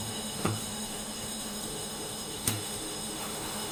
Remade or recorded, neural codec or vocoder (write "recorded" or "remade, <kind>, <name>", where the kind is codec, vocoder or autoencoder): remade, autoencoder, DAC-VAE